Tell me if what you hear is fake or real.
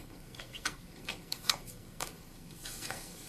fake